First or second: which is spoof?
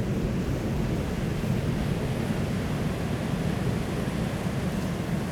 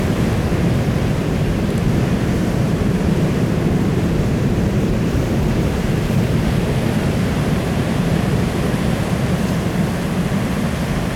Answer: second